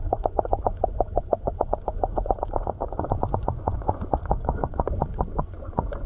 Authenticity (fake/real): fake